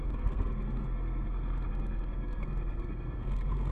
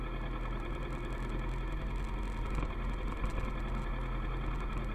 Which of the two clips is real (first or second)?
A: second